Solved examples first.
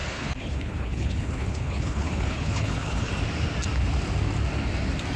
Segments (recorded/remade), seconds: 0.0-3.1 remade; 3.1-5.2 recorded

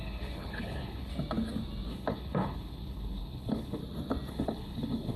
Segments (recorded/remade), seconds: 0.0-1.1 remade; 1.1-1.9 recorded; 1.9-3.8 remade; 3.8-4.3 recorded; 4.3-5.2 remade

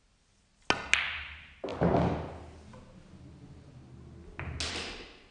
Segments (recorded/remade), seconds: 0.0-5.3 recorded

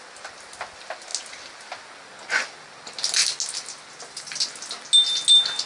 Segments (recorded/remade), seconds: 0.0-5.7 recorded

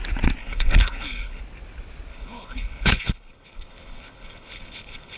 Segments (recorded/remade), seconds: 0.0-0.4 recorded; 0.4-1.4 remade; 1.4-2.1 recorded; 2.1-5.2 remade